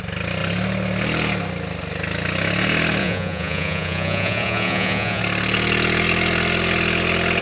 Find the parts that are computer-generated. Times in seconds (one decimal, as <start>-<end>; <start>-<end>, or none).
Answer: 3.0-5.2